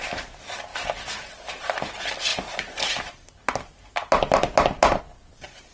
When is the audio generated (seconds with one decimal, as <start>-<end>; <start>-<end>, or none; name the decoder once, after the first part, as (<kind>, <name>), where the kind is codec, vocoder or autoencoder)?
none